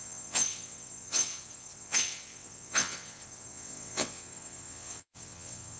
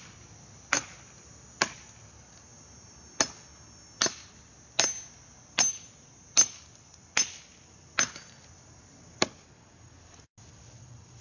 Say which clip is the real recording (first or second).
second